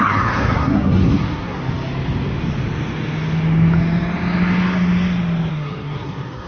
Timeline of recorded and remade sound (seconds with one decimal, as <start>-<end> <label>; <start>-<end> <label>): 0.0-1.6 remade; 1.6-5.5 recorded; 5.5-6.5 remade